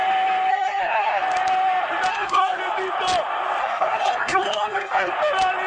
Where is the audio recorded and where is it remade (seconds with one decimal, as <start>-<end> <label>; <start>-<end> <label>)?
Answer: 0.0-0.5 recorded; 0.5-1.2 remade; 1.2-2.1 recorded; 2.1-2.6 remade; 2.6-3.6 recorded; 3.6-5.1 remade; 5.1-5.7 recorded